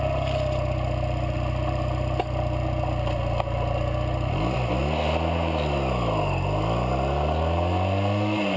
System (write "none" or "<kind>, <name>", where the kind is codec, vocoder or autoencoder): none